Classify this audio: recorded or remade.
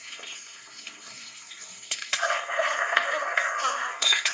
remade